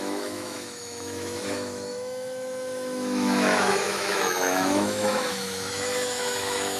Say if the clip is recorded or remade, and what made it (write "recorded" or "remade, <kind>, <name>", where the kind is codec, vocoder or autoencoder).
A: remade, autoencoder, DAC-VAE